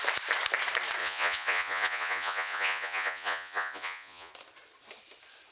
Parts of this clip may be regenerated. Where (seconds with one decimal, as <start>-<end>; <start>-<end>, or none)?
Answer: 1.0-4.3

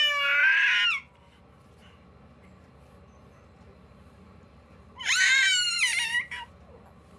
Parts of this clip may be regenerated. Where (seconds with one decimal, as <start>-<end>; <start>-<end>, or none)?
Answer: 3.7-6.5

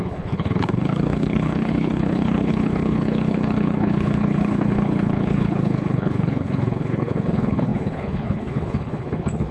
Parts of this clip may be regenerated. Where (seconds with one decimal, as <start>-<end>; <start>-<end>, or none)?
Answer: 0.0-9.5